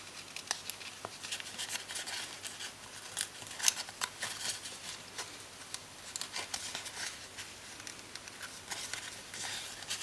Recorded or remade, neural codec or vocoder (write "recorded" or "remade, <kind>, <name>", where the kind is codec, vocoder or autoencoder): recorded